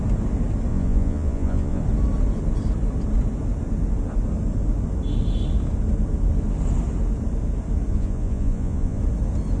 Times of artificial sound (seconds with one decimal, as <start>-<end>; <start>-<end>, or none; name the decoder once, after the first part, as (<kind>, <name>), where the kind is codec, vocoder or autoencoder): 0.7-1.8 (vocoder, Vocos); 7.9-9.0